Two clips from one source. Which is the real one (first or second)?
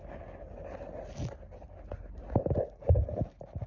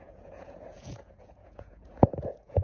first